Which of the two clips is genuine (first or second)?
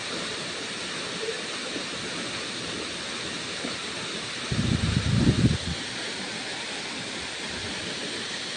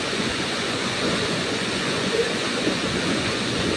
first